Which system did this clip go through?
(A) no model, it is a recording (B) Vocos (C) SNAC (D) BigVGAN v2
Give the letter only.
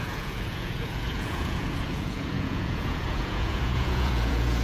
B